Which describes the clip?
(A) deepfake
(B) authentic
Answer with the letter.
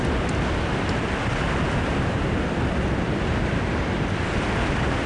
B